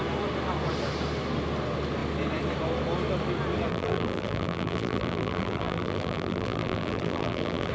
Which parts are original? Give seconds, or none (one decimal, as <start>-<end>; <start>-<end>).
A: 0.0-3.7